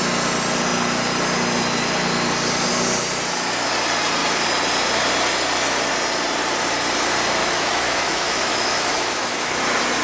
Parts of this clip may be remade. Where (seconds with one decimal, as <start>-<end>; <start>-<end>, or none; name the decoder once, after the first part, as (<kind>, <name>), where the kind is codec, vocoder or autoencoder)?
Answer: 7.4-9.6 (autoencoder, DAC-VAE)